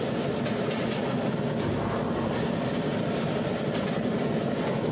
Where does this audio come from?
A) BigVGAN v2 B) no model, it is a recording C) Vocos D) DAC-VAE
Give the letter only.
B